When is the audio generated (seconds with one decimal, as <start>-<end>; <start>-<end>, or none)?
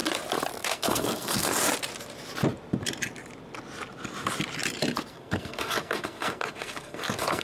0.6-1.5; 5.1-7.4